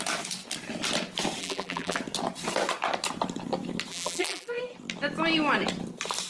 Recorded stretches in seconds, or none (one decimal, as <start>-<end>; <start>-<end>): 0.0-1.4; 2.0-3.9; 4.6-6.3